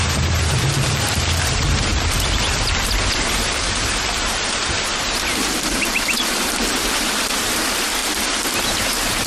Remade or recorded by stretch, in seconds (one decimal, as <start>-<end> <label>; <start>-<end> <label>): 0.0-8.0 remade; 8.0-8.5 recorded; 8.5-9.3 remade

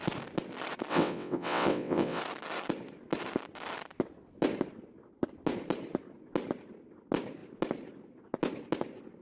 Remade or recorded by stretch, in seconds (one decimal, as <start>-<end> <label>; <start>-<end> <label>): 0.0-0.9 recorded; 0.9-2.2 remade; 2.2-9.2 recorded

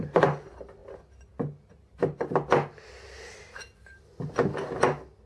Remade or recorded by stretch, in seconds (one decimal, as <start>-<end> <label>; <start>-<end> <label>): 0.0-5.3 recorded